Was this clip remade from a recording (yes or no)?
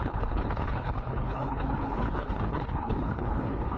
yes